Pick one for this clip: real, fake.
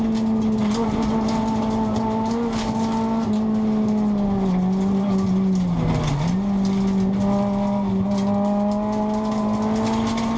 real